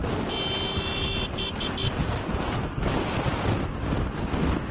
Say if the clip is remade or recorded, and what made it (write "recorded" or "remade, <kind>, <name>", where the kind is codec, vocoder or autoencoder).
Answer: recorded